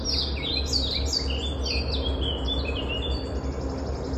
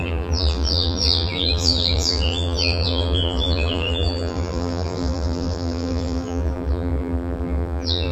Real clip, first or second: first